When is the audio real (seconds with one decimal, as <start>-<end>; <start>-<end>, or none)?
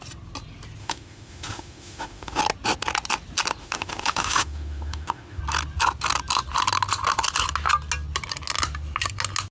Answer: 0.0-0.8; 2.4-3.6; 5.4-9.5